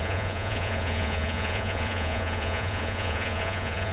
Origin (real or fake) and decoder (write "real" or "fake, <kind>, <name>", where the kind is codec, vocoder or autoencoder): fake, vocoder, Vocos